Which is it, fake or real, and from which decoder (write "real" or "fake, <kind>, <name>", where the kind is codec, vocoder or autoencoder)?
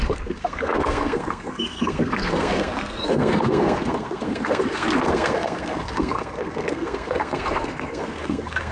fake, codec, SNAC